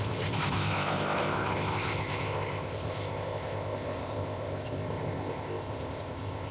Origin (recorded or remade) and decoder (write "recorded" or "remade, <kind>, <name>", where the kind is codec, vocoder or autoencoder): remade, codec, ZipCodec